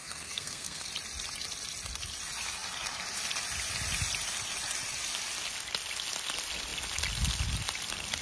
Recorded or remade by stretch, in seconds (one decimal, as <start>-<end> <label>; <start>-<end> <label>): 0.0-0.9 remade; 0.9-8.2 recorded